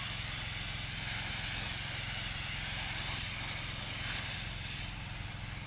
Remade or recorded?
recorded